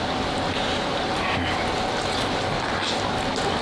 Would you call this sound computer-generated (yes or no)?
no